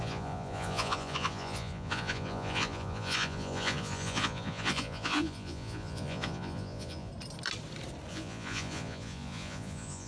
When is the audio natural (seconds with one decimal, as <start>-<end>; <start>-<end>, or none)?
7.1-8.1